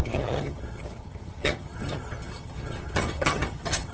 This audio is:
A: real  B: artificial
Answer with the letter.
B